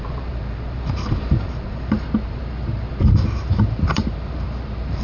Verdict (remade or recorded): remade